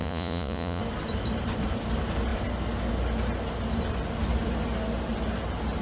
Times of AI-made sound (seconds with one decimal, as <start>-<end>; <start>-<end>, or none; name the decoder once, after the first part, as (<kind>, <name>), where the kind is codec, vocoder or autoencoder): 0.0-0.8 (vocoder, Vocos)